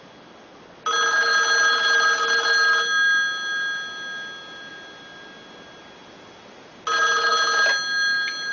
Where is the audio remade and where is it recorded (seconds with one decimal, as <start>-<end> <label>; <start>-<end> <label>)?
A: 0.0-8.5 recorded